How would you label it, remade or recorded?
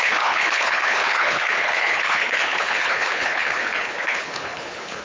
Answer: remade